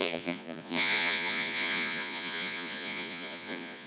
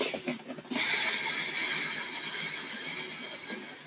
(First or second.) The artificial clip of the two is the first